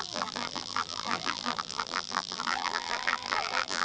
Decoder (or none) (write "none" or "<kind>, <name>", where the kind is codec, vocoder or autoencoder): vocoder, BigVGAN v2